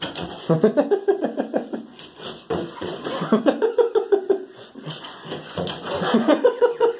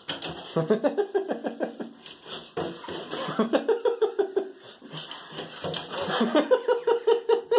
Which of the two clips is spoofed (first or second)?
first